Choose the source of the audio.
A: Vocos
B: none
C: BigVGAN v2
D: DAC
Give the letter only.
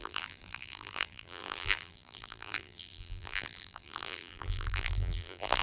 C